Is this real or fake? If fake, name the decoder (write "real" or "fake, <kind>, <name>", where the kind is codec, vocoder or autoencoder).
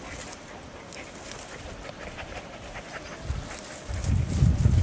real